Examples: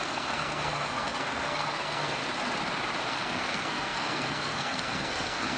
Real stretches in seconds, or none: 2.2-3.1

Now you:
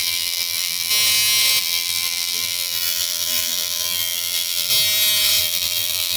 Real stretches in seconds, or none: 0.9-1.6; 4.7-5.4

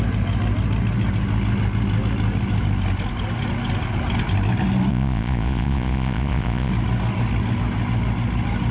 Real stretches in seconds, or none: 0.0-4.9; 6.7-8.7

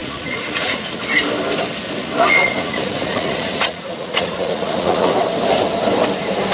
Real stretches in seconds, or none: 1.0-2.0; 5.1-6.5

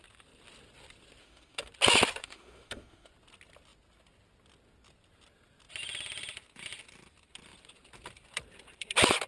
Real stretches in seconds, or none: 0.0-1.2; 1.7-2.2; 3.1-9.3

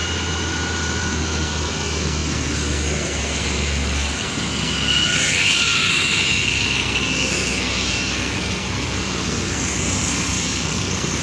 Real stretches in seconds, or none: 0.0-1.0

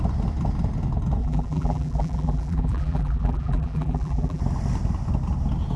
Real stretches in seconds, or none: 0.0-1.2; 4.4-5.8